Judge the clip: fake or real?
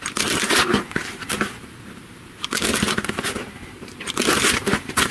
fake